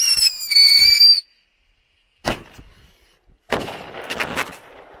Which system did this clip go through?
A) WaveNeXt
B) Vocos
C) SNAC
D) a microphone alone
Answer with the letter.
D